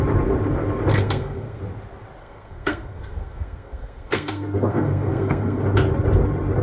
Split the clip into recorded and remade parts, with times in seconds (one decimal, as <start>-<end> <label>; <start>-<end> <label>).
0.0-0.9 recorded; 0.9-1.6 remade; 1.6-2.2 recorded; 2.2-5.6 remade; 5.6-6.6 recorded